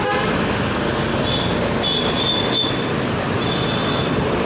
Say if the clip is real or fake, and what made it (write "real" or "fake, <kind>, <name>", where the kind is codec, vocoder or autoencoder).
real